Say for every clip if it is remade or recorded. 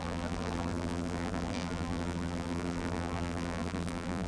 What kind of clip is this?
remade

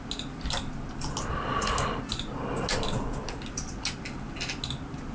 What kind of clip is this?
recorded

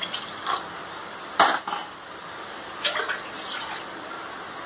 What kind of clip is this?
recorded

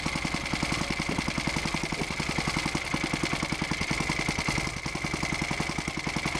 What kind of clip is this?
recorded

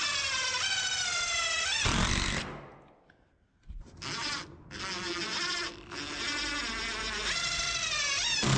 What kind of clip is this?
recorded